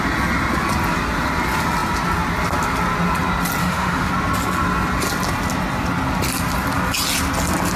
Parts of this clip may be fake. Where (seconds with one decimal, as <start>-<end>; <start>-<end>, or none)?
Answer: 3.6-4.1